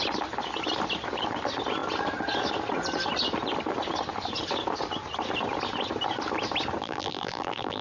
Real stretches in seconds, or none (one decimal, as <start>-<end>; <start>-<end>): 0.0-6.8